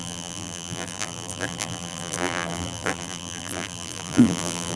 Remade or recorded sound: remade